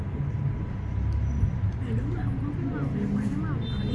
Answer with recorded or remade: recorded